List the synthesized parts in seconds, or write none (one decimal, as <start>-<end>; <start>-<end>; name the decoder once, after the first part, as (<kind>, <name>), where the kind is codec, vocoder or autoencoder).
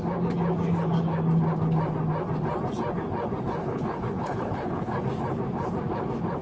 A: 3.6-5.0 (codec, HILCodec)